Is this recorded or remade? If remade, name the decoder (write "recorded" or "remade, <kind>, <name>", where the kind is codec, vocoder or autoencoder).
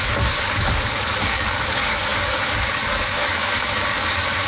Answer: remade, codec, DAC